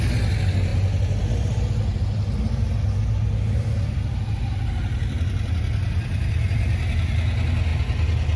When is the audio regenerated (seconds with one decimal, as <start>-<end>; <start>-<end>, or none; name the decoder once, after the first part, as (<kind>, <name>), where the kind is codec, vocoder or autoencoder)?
none